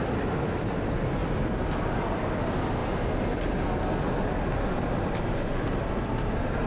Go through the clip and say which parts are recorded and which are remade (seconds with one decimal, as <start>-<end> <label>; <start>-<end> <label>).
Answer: 0.0-1.2 remade; 1.2-1.8 recorded; 1.8-2.8 remade; 2.8-5.9 recorded; 5.9-6.7 remade